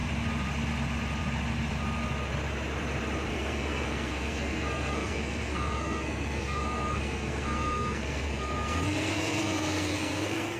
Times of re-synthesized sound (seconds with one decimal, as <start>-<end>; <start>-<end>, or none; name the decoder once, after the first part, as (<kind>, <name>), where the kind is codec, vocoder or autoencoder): 3.3-10.6 (codec, SNAC)